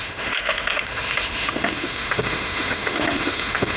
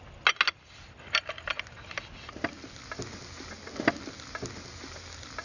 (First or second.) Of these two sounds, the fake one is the first